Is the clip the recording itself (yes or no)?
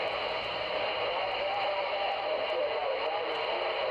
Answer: yes